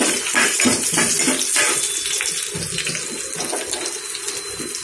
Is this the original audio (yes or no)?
yes